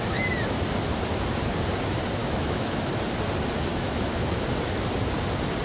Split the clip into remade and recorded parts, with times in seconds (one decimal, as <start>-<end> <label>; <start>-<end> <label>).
0.0-2.2 recorded; 2.2-2.9 remade; 2.9-3.7 recorded; 3.7-4.3 remade; 4.3-5.6 recorded